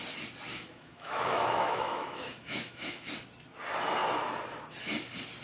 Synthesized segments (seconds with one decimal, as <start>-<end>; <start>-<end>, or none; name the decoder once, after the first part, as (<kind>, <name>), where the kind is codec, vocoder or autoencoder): 0.5-3.1 (autoencoder, DAC-VAE)